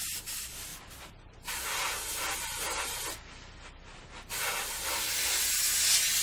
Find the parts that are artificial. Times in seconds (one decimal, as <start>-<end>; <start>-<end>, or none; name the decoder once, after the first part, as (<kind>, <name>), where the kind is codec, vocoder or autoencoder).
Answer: none